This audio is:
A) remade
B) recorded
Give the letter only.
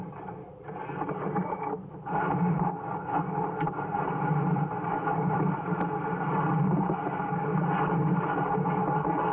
B